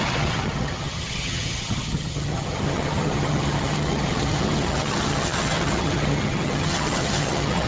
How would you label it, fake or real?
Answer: fake